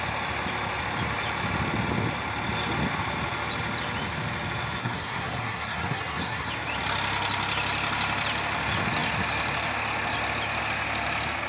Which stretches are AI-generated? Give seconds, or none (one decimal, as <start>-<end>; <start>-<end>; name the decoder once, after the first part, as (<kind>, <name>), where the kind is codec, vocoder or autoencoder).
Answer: 4.8-6.5 (codec, SNAC)